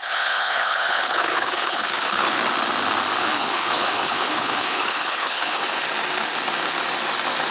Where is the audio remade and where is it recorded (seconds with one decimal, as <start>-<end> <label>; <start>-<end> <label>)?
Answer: 0.0-2.4 remade; 2.4-3.2 recorded; 3.2-5.6 remade; 5.6-7.5 recorded